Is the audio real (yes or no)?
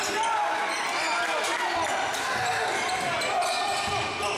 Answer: yes